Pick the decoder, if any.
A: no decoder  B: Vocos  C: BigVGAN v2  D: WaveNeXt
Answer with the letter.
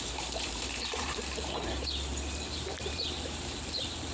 C